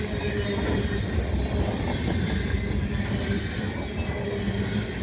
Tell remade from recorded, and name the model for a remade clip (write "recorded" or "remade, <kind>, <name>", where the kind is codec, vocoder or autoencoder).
recorded